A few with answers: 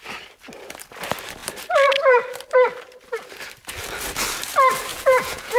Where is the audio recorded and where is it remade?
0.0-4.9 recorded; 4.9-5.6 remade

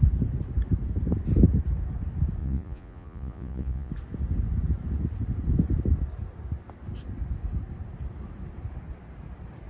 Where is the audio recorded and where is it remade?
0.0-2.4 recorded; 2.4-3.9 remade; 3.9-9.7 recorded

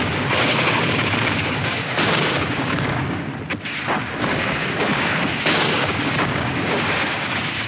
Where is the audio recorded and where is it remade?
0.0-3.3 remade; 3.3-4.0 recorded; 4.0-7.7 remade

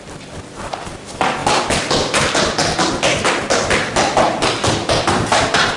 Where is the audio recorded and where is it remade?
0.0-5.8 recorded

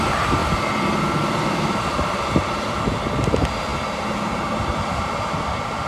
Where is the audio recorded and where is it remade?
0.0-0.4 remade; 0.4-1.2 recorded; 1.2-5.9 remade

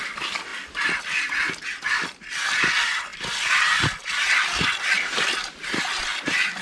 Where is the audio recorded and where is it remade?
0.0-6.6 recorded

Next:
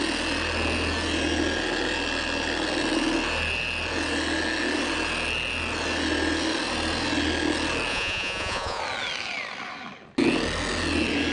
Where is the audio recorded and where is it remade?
0.0-7.9 recorded; 7.9-8.8 remade; 8.8-11.3 recorded